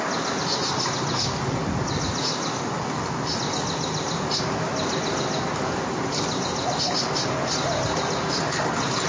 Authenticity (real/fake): real